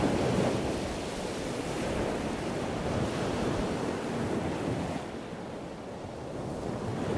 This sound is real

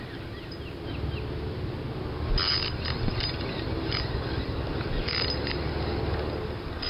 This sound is real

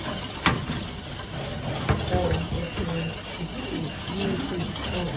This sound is real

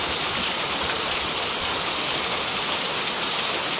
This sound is fake